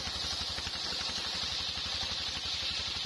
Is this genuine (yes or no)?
yes